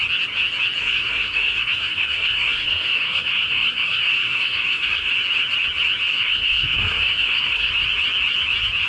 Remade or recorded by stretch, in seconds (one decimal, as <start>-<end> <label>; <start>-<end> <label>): 0.0-0.8 recorded; 0.8-5.1 remade; 5.1-6.1 recorded; 6.1-7.7 remade; 7.7-8.9 recorded